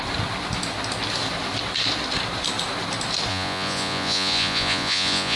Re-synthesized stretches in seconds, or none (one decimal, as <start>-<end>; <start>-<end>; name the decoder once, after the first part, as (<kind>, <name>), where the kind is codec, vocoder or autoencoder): 3.3-5.4 (vocoder, Vocos)